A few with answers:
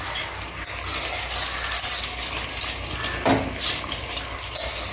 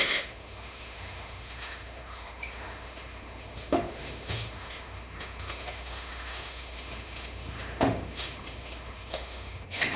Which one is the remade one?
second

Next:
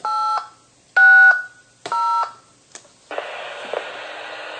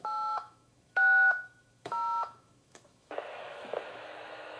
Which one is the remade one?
second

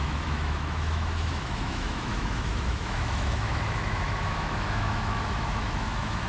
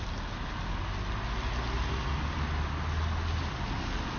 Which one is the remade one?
first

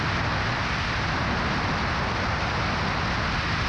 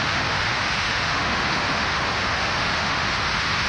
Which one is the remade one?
second